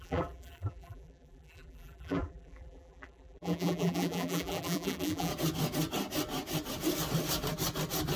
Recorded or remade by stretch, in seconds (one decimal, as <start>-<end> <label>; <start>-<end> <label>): 0.0-5.3 remade; 5.3-8.2 recorded